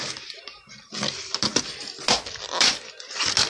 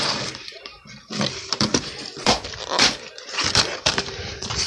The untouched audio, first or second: first